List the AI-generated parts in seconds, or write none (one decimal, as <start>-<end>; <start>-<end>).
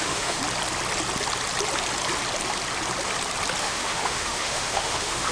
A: 0.0-0.4; 3.6-5.3